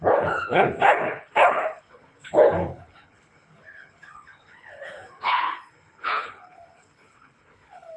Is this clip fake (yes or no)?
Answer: yes